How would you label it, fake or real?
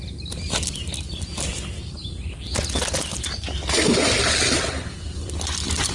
real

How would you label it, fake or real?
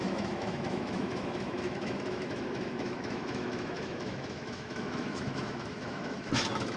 fake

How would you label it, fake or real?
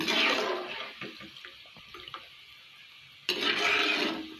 real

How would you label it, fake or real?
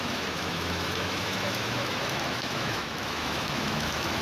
fake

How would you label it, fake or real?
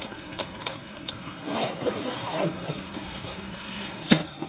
fake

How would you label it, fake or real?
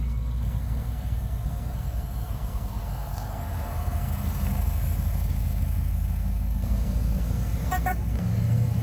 fake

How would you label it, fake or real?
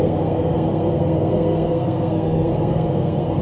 fake